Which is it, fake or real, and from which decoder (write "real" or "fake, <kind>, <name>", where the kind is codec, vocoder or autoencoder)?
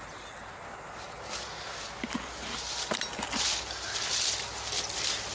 real